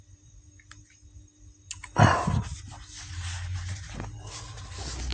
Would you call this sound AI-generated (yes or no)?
no